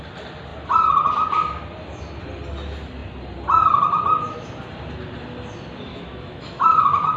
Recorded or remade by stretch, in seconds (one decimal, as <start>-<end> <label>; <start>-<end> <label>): 0.0-5.9 recorded; 5.9-7.2 remade